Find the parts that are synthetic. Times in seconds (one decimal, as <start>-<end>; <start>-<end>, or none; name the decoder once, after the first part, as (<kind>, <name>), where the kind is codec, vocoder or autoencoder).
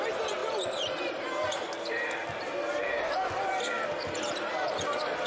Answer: none